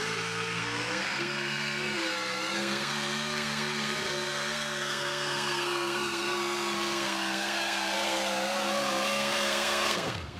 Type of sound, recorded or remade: remade